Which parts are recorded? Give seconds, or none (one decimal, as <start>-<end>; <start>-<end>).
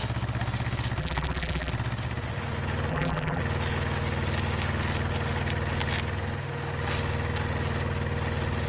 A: 0.0-1.0; 1.7-2.9; 3.4-8.7